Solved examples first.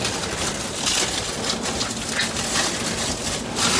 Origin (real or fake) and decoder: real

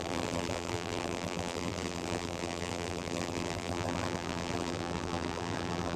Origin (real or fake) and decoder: fake, vocoder, BigVGAN v2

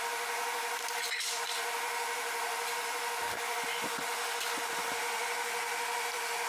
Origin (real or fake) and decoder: fake, vocoder, BigVGAN v2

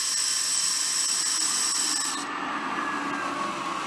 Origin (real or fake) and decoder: real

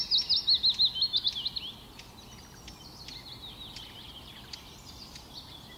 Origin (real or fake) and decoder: real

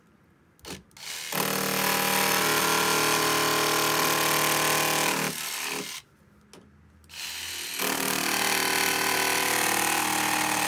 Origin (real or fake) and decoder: real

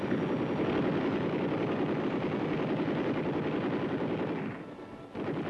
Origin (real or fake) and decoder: real